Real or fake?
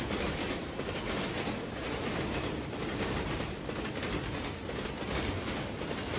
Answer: real